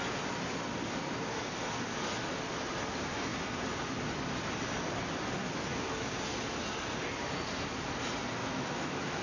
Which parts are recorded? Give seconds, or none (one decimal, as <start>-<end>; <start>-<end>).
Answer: 0.0-5.4; 6.1-8.4